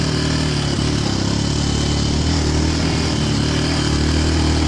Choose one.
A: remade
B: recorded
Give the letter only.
B